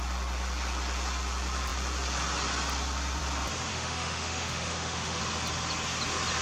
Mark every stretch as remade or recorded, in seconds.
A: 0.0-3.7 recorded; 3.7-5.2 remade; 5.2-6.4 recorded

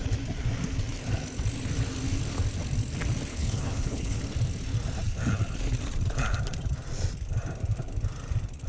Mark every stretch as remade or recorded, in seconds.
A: 0.0-3.3 recorded; 3.3-4.2 remade; 4.2-8.7 recorded

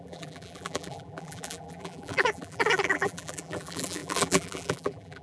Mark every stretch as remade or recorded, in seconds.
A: 0.0-5.2 remade

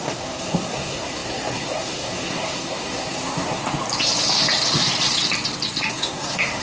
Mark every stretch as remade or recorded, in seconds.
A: 0.0-3.6 remade; 3.6-5.9 recorded; 5.9-6.6 remade